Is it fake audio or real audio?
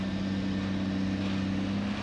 real